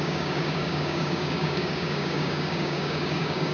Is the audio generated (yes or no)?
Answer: yes